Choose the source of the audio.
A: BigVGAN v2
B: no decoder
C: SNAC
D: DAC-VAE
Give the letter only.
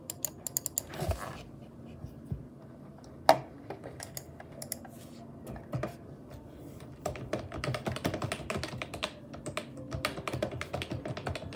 B